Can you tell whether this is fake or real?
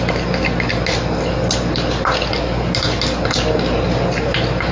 real